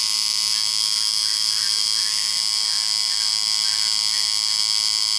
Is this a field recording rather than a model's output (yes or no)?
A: no